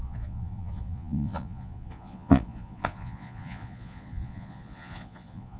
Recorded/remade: remade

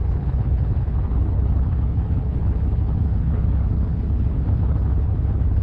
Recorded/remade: remade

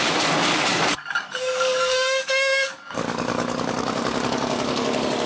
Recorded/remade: remade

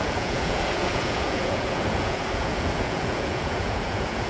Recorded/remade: remade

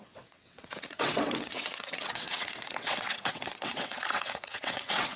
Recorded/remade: remade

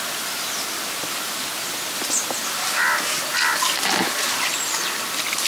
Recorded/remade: recorded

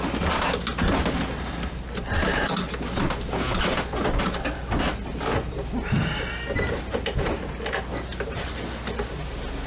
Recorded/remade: recorded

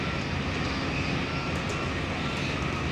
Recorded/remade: recorded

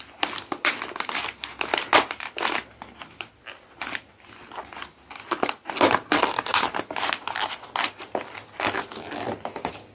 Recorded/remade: recorded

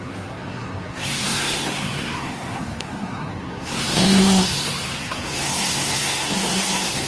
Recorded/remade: remade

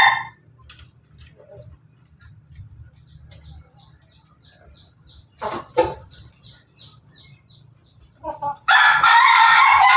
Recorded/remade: remade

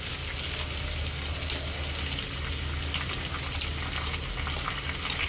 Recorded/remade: recorded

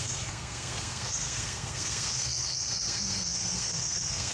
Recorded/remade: remade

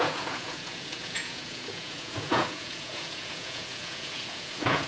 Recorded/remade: remade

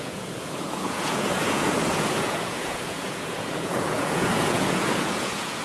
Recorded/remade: remade